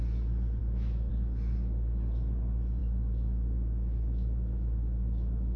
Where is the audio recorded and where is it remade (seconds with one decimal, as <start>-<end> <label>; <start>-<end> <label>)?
0.0-0.6 recorded; 0.6-1.1 remade; 1.1-2.8 recorded; 2.8-5.6 remade